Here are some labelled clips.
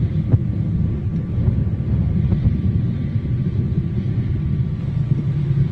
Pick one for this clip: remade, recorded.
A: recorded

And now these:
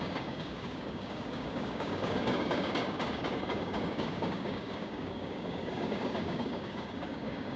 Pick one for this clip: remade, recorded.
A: remade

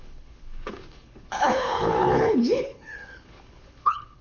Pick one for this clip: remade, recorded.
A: remade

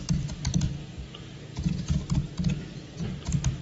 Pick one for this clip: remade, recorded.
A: recorded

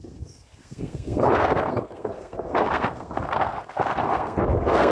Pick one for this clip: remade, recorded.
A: remade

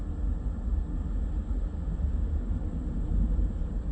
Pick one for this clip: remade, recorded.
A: recorded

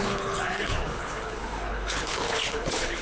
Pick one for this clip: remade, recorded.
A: remade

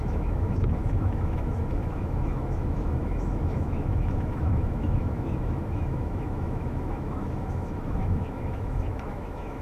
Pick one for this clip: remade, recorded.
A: remade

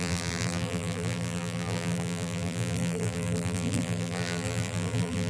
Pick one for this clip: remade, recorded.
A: remade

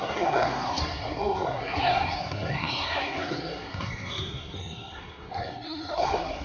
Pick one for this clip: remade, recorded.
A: remade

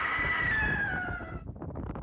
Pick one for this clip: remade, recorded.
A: recorded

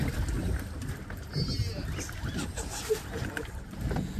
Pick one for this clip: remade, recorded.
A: recorded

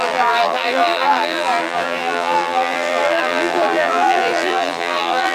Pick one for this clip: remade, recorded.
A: remade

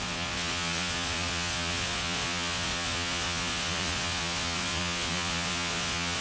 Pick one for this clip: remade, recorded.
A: remade